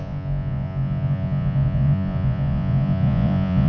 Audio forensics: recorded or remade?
remade